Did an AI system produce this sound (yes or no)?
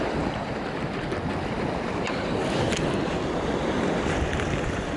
no